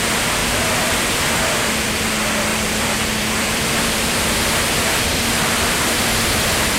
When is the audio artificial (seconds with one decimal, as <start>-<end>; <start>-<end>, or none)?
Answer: 0.4-2.0; 2.5-5.8